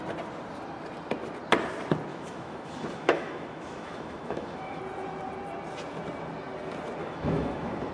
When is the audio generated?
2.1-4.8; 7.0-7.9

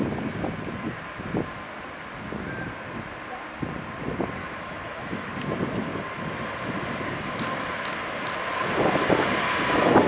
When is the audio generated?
4.4-5.3

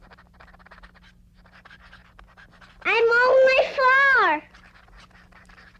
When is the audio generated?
none

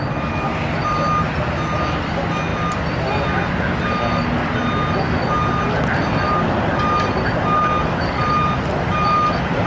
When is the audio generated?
none

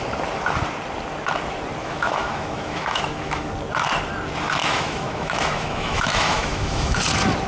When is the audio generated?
1.8-3.5; 4.6-7.0

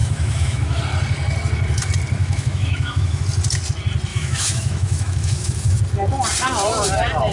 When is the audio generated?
0.0-0.8; 2.2-3.2; 4.1-5.8

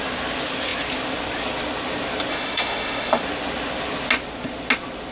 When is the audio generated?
2.3-3.2